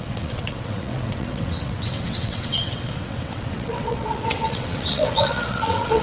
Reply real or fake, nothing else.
fake